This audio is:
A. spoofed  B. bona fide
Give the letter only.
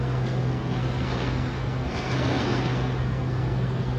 A